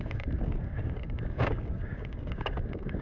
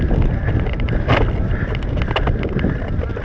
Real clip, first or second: second